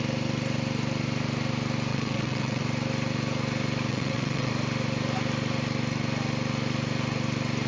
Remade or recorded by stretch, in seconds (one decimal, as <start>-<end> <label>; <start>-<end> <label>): 0.0-1.9 recorded; 1.9-2.6 remade; 2.6-3.9 recorded; 3.9-4.5 remade; 4.5-7.7 recorded